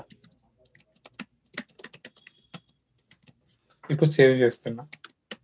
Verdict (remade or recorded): recorded